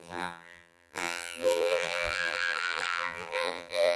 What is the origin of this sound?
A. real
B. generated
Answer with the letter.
B